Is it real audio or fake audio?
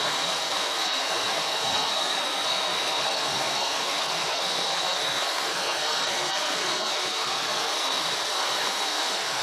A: fake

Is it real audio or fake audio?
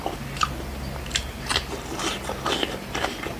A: fake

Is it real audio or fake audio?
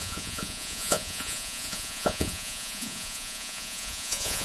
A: fake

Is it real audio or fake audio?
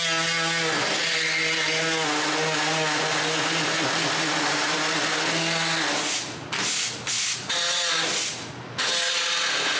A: real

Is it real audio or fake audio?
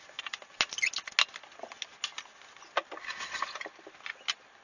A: real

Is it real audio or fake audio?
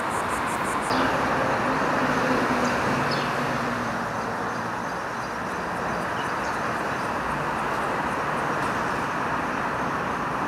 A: real